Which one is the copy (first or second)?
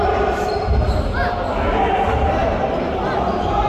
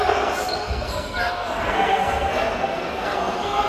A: second